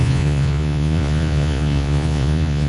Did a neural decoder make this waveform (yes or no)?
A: yes